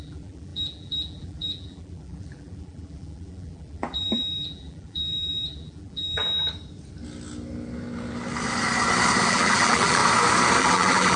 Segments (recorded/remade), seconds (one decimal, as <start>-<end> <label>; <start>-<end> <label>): 0.0-6.2 remade; 6.2-9.3 recorded; 9.3-10.0 remade; 10.0-10.6 recorded; 10.6-11.2 remade